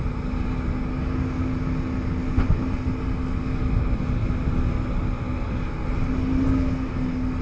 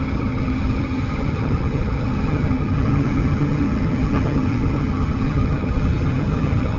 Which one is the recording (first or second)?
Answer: first